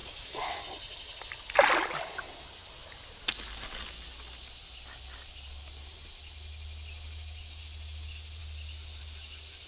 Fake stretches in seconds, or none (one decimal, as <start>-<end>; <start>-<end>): 0.0-0.6